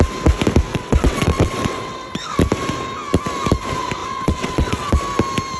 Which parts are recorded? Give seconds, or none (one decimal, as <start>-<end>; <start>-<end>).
0.0-0.7; 2.4-4.0; 5.0-5.6